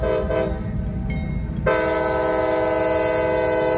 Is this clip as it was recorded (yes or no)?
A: yes